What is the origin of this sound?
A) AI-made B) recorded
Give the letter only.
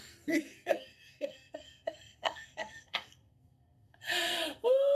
A